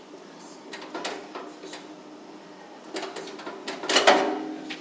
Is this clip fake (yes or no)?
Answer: no